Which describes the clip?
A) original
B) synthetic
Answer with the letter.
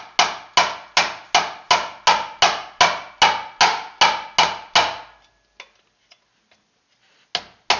A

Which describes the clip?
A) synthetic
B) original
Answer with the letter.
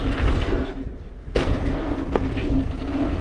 A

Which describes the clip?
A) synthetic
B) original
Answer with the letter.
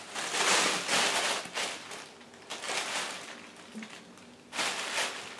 B